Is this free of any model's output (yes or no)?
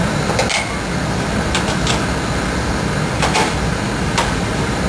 yes